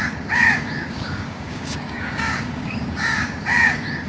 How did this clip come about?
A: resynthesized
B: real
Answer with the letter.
A